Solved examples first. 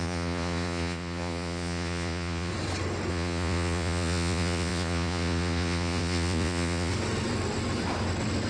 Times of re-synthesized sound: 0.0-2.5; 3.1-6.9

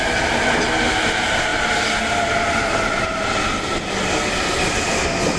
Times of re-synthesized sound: none

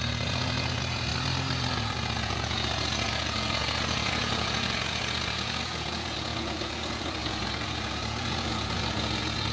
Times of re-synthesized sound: 0.0-1.1; 1.7-9.5

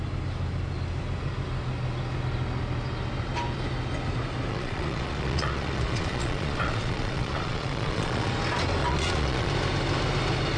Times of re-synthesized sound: 4.5-8.3; 8.8-9.5